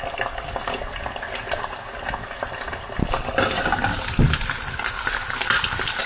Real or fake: real